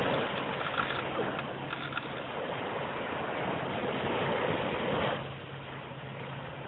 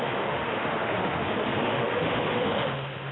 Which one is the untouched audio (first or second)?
first